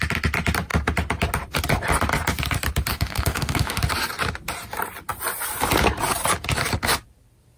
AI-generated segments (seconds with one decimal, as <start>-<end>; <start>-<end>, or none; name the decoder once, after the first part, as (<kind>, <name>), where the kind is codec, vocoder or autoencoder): 2.9-3.8 (autoencoder, DAC-VAE)